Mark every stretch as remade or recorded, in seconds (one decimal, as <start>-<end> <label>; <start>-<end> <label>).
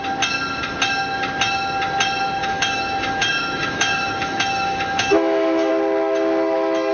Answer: 0.0-2.4 recorded; 2.4-5.7 remade; 5.7-6.9 recorded